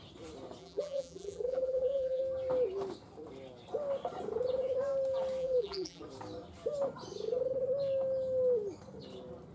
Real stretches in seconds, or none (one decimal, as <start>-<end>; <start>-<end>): 0.0-0.6; 2.2-5.4; 6.0-9.5